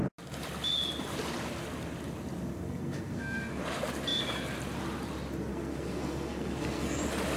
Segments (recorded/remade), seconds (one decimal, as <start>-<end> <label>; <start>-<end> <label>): 0.0-2.5 recorded; 2.5-3.6 remade; 3.6-5.5 recorded; 5.5-7.0 remade; 7.0-7.4 recorded